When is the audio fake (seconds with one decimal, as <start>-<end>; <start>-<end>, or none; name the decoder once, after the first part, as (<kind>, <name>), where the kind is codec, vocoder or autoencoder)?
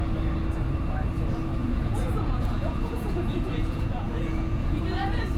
1.6-4.8 (vocoder, Vocos)